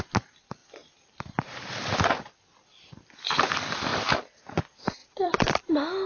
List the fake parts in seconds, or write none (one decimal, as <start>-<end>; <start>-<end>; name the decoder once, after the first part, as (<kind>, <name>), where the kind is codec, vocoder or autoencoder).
0.6-3.3 (vocoder, BigVGAN v2); 3.9-4.6; 5.0-5.6